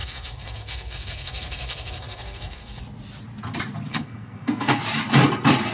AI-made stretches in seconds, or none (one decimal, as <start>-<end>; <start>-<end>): 0.0-2.8; 3.9-4.8